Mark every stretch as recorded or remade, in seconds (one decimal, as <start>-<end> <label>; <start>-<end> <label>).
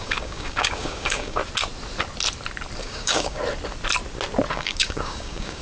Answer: 0.0-1.4 remade; 1.4-2.8 recorded; 2.8-3.4 remade; 3.4-4.5 recorded; 4.5-5.6 remade